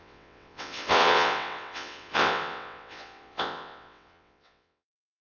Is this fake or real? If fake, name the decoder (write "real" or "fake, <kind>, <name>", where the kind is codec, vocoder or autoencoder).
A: fake, vocoder, WaveNeXt